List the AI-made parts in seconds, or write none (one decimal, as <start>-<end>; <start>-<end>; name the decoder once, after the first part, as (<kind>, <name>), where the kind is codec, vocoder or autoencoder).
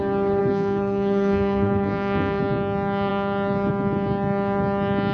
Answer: 0.4-2.4 (codec, SNAC)